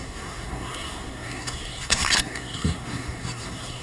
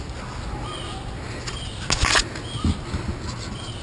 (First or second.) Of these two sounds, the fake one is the first